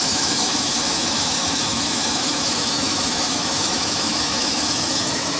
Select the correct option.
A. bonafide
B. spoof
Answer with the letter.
B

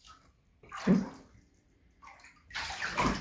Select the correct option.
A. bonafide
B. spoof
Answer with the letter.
A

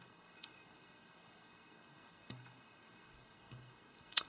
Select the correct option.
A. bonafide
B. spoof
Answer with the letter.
B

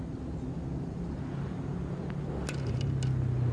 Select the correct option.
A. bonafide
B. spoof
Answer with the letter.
A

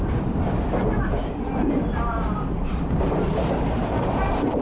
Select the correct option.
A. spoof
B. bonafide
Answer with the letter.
A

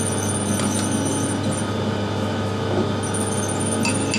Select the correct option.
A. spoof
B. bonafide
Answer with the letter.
B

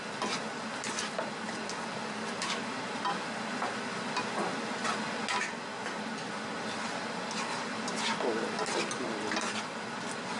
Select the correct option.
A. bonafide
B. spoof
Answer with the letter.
A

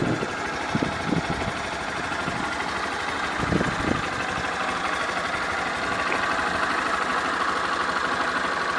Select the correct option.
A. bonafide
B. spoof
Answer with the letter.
A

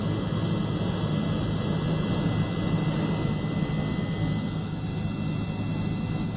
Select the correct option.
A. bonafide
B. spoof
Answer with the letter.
A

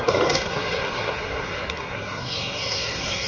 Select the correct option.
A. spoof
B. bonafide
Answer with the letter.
A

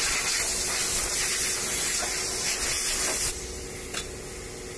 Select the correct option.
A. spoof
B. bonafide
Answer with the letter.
B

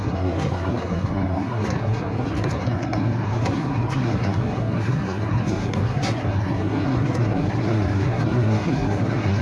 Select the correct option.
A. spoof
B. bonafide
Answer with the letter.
A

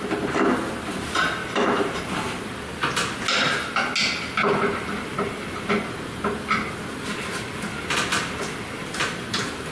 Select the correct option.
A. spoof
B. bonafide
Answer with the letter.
B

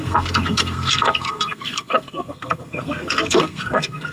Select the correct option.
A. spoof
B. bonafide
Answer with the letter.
A